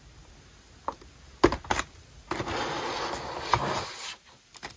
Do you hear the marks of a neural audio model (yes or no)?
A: no